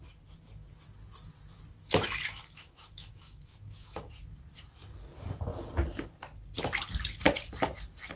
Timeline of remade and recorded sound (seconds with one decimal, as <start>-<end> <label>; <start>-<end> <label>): 0.0-1.8 recorded; 1.8-4.1 remade; 4.1-8.2 recorded